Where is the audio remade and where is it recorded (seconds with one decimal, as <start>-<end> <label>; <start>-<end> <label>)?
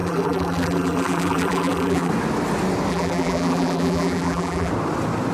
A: 0.0-2.1 remade; 2.1-2.9 recorded; 2.9-4.7 remade; 4.7-5.3 recorded